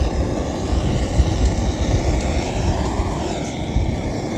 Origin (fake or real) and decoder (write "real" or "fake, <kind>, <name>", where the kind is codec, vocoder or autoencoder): real